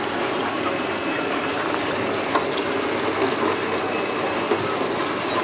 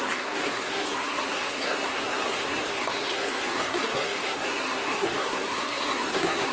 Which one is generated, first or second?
second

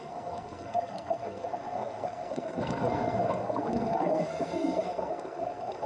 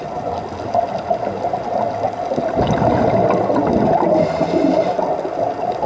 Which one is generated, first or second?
first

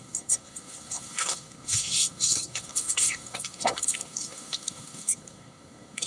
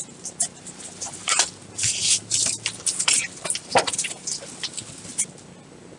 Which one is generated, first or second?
first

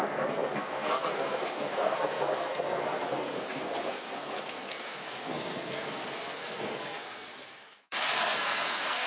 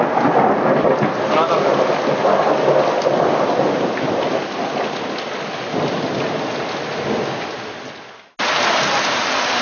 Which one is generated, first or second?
first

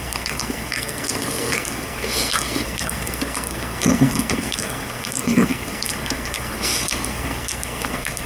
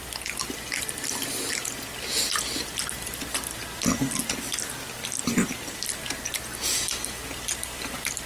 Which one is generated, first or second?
first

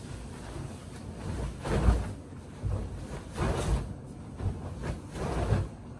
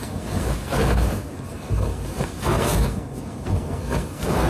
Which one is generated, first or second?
second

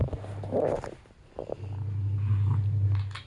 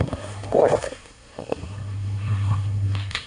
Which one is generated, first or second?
second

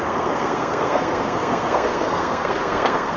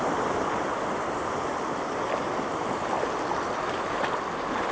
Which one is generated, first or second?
first